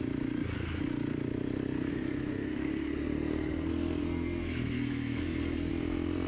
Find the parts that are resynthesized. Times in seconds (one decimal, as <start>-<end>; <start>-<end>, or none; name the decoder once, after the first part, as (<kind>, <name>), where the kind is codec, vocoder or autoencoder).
1.9-5.7 (codec, SNAC)